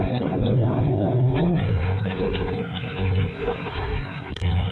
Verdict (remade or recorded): remade